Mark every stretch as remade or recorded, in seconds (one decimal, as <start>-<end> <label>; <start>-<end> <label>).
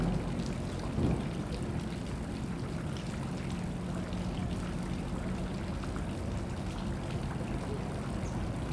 0.0-8.7 recorded